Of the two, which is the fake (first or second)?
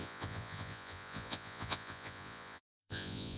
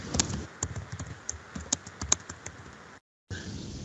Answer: first